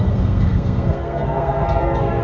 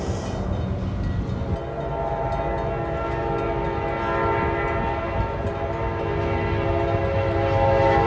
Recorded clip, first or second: second